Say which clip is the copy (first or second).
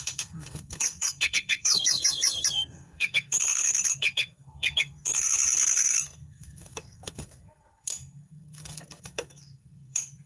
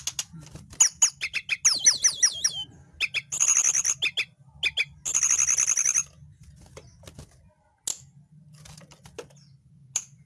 first